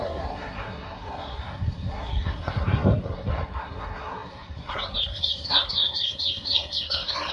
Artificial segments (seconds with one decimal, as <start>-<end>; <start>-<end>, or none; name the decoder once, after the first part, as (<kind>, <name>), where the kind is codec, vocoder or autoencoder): 0.0-7.3 (codec, SNAC)